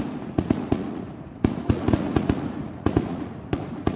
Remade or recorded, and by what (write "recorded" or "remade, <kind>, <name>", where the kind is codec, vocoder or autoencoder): remade, vocoder, Vocos